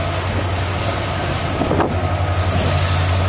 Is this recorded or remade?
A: recorded